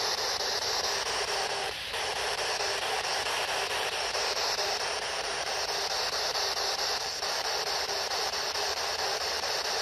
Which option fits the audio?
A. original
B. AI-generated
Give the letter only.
B